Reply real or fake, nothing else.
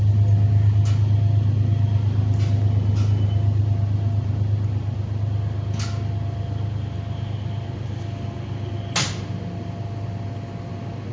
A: real